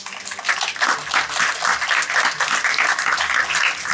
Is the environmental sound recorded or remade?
recorded